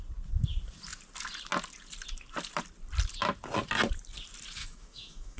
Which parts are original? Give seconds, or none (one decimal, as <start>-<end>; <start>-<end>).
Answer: 0.0-4.6